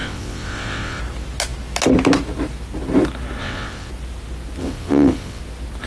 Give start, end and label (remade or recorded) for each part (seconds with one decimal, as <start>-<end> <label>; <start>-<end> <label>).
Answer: 0.0-1.0 remade; 1.0-3.4 recorded; 3.4-3.9 remade; 3.9-4.6 recorded; 4.6-5.4 remade; 5.4-5.9 recorded